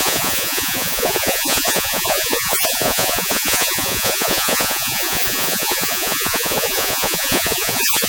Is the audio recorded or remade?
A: remade